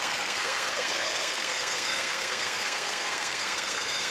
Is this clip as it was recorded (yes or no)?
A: no